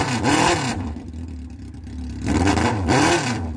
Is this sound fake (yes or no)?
yes